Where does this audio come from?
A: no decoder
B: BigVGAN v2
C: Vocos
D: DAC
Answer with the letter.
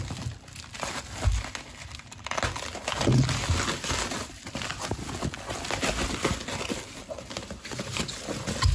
A